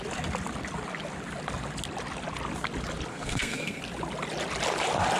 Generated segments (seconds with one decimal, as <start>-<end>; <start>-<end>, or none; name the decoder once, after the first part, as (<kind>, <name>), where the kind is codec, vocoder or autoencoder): 3.1-3.8 (codec, SNAC)